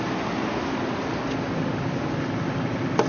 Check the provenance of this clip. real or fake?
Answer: real